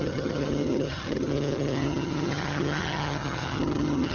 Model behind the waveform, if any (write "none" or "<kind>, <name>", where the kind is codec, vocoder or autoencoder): vocoder, HiFi-GAN